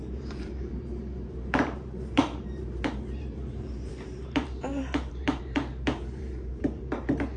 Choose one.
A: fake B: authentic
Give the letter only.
A